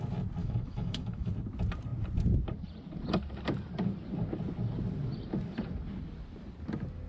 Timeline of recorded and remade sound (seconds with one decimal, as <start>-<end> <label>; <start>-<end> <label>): 0.0-0.4 recorded; 0.4-1.3 remade; 1.3-7.1 recorded